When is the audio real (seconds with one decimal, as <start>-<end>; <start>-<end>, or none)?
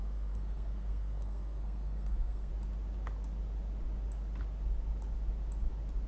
2.5-6.1